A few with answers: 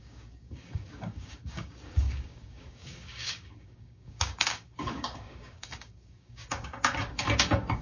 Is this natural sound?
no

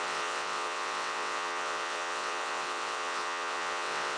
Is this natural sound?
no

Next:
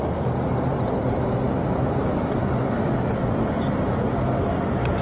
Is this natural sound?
yes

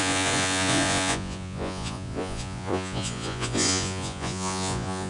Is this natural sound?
no